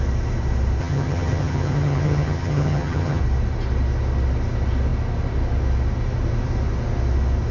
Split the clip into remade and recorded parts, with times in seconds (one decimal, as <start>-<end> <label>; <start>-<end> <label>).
0.0-0.8 recorded; 0.8-3.2 remade; 3.2-7.5 recorded